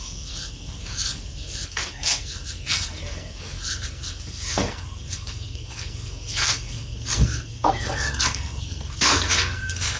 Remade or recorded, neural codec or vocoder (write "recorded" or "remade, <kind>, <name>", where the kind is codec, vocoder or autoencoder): remade, codec, SNAC